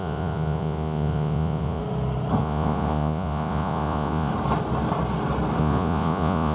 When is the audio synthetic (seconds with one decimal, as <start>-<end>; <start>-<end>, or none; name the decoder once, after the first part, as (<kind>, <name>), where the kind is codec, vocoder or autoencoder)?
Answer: 0.0-1.8 (vocoder, Vocos); 2.4-4.3; 5.6-6.5